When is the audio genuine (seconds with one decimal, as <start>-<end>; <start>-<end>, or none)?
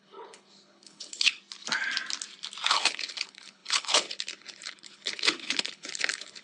1.4-2.7